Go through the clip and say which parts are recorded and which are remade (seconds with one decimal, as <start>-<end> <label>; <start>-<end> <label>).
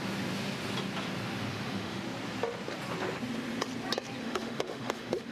0.0-1.5 recorded; 1.5-2.0 remade; 2.0-4.2 recorded; 4.2-5.3 remade